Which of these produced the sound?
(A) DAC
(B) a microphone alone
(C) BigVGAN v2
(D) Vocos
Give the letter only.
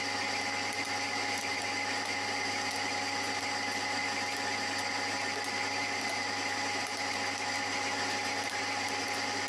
B